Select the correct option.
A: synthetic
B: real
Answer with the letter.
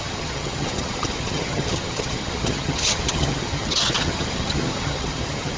A